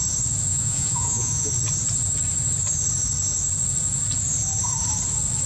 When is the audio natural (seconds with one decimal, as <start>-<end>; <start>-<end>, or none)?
0.0-0.5; 1.5-5.5